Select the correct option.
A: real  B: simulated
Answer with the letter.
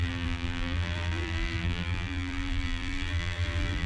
B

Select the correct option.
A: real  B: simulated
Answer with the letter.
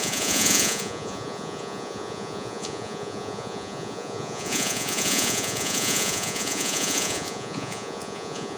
B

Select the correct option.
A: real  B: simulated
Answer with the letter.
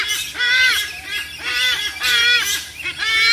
B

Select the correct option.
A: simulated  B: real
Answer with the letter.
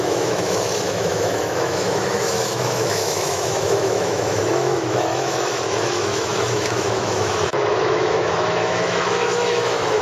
A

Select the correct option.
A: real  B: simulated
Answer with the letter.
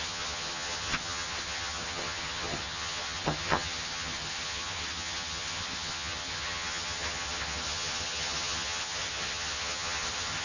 B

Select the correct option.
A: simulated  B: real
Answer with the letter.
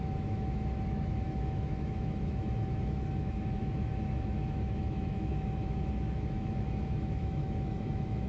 A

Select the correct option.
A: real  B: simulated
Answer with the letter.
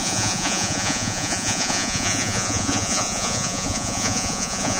B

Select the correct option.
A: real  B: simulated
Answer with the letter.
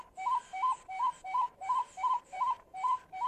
B